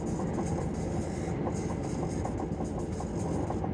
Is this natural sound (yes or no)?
yes